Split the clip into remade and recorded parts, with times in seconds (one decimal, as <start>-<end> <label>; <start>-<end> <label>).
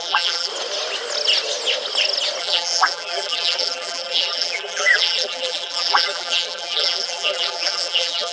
0.0-0.5 remade; 0.5-2.4 recorded; 2.4-8.3 remade